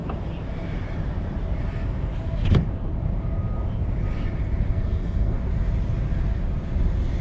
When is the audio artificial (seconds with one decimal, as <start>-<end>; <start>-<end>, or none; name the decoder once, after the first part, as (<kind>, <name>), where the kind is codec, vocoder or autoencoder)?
4.7-5.4 (codec, SNAC)